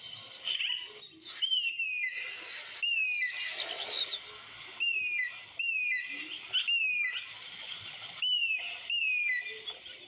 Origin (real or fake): real